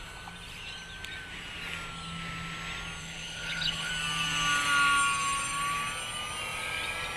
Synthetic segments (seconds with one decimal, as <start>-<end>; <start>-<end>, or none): 3.0-3.9